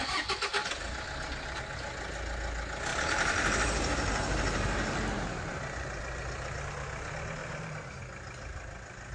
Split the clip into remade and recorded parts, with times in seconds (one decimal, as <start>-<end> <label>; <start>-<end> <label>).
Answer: 0.0-2.9 recorded; 2.9-6.7 remade; 6.7-7.4 recorded; 7.4-8.0 remade; 8.0-9.1 recorded